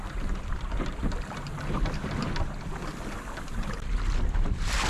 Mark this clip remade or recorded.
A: recorded